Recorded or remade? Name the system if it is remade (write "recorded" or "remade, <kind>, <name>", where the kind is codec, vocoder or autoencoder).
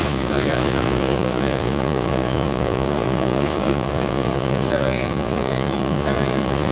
remade, vocoder, Vocos